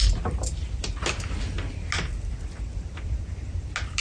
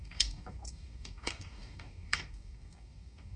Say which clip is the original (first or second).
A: first